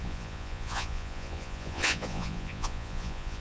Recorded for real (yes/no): no